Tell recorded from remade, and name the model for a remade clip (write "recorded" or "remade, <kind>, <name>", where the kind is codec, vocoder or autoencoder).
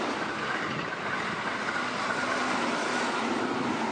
recorded